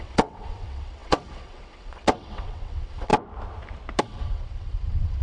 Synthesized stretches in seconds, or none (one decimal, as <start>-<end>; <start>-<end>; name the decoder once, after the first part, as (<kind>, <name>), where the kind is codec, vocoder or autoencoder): 0.0-3.1 (vocoder, WaveNeXt); 4.0-5.2